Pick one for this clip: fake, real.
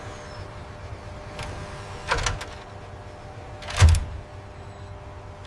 real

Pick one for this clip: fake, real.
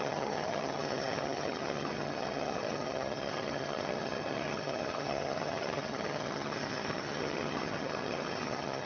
fake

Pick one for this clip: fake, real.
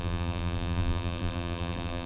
fake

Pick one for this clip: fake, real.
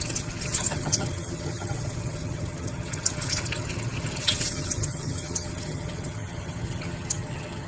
fake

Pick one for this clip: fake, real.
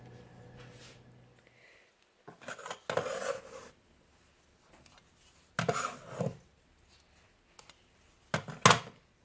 real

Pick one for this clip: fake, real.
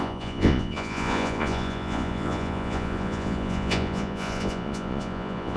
fake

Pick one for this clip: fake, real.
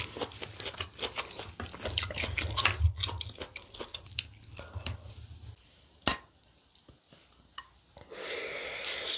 real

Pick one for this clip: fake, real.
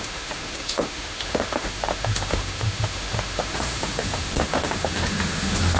fake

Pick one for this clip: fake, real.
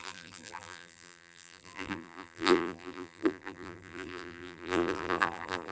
fake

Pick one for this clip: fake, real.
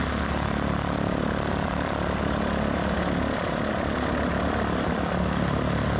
real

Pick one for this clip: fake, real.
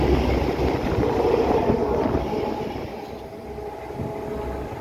real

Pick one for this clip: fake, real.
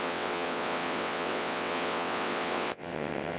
fake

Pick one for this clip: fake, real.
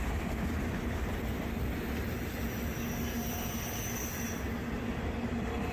real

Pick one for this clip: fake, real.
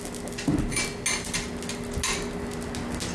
real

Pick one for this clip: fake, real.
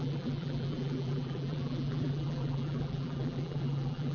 fake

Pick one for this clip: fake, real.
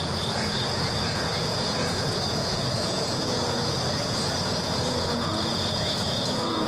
fake